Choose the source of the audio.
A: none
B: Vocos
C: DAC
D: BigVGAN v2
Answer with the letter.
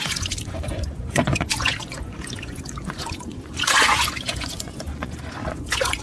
B